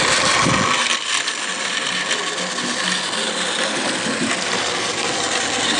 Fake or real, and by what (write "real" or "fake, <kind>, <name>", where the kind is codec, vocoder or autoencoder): real